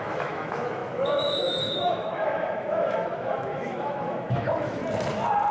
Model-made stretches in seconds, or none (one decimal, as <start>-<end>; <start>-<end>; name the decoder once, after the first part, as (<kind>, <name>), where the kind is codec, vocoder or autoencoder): 0.0-4.8 (autoencoder, DAC-VAE)